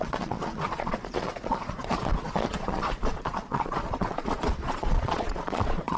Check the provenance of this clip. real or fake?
fake